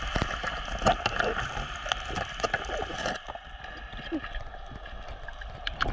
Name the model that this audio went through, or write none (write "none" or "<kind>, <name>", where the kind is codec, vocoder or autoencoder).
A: none